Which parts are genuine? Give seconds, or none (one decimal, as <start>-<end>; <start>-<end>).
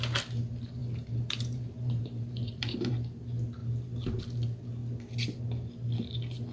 0.0-0.8; 2.9-6.5